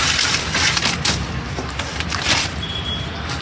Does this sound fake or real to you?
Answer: real